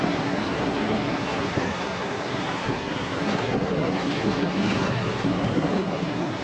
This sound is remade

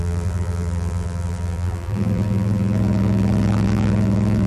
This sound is remade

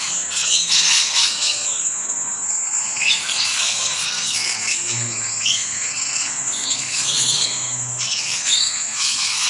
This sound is remade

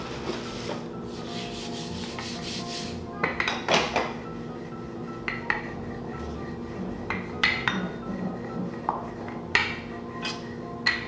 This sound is recorded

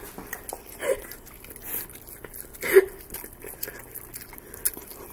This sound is recorded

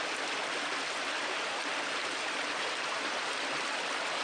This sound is recorded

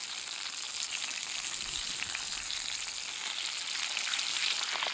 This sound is recorded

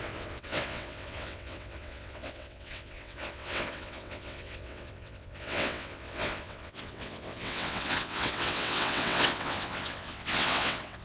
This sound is remade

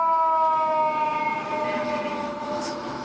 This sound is remade